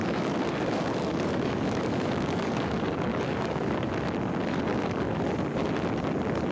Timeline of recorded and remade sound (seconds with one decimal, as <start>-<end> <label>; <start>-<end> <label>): 0.0-3.9 remade; 3.9-4.7 recorded; 4.7-5.2 remade; 5.2-6.5 recorded